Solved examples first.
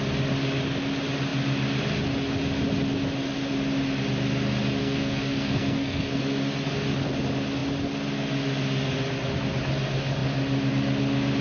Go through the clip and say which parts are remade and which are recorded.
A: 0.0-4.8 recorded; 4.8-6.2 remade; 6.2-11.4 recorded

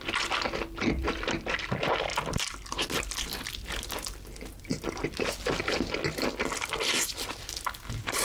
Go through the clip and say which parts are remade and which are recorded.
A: 0.0-8.2 recorded

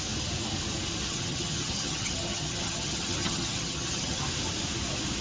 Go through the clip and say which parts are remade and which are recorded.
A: 0.0-1.1 recorded; 1.1-4.2 remade; 4.2-5.2 recorded